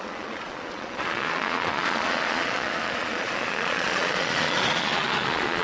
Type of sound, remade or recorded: remade